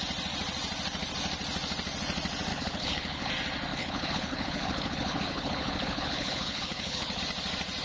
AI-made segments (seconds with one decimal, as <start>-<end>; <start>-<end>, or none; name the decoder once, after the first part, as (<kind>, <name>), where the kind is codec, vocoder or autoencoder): 2.5-3.3 (codec, HILCodec); 3.7-7.2